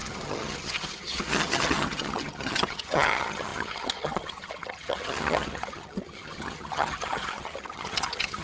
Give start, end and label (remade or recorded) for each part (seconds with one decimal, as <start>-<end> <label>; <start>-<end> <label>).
0.0-8.4 remade